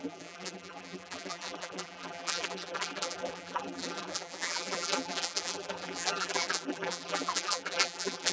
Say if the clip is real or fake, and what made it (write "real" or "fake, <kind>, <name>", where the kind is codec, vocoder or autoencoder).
fake, vocoder, BigVGAN v2